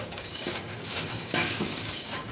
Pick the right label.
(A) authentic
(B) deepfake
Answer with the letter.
B